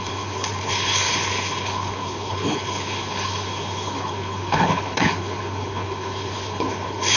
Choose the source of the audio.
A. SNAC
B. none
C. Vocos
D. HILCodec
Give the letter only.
D